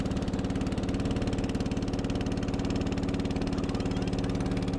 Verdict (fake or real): real